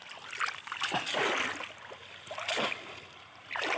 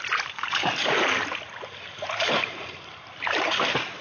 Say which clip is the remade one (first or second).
second